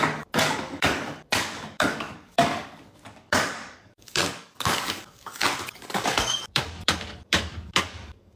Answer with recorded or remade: remade